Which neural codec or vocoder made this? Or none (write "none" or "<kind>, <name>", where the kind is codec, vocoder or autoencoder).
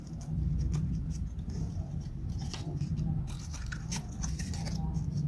none